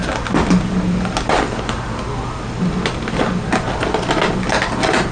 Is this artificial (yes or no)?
no